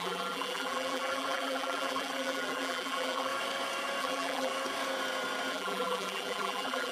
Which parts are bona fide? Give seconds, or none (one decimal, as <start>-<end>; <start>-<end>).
3.3-4.0; 4.5-5.5